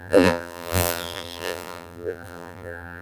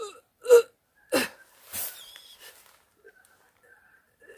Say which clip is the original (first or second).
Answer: second